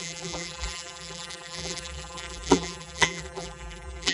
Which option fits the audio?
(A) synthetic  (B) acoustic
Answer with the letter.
A